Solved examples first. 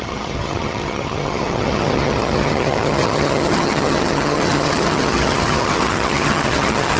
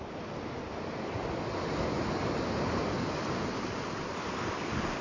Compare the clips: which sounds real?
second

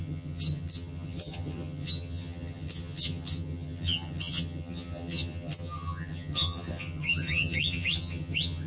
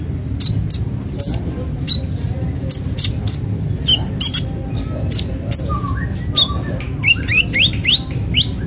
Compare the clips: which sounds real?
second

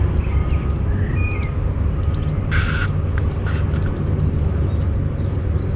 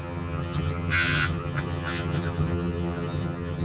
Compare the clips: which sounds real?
first